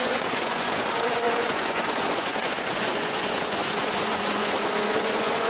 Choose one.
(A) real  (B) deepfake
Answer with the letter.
B